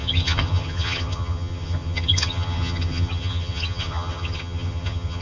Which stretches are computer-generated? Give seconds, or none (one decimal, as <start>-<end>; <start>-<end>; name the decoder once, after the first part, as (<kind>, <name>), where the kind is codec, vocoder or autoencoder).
0.0-5.2 (vocoder, HiFi-GAN)

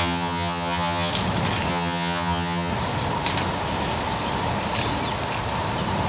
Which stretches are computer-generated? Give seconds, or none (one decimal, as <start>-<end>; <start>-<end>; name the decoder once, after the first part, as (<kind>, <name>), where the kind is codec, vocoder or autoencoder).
0.0-1.1 (vocoder, HiFi-GAN); 1.7-2.7

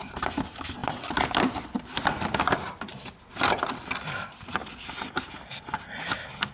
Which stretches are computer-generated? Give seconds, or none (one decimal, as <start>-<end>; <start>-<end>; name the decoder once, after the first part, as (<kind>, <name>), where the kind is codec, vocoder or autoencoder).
none

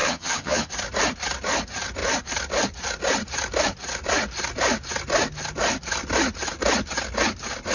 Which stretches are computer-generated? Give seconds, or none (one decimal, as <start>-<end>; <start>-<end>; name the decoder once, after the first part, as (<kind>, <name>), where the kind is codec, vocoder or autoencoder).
0.0-0.7 (vocoder, HiFi-GAN)

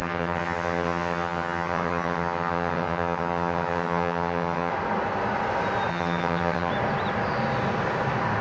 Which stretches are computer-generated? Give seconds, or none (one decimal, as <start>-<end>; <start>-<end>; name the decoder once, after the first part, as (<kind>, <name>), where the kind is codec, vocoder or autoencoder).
0.0-4.7 (vocoder, HiFi-GAN); 5.9-6.7